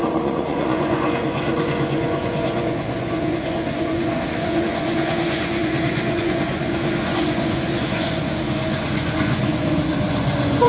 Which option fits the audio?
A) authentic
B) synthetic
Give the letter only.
B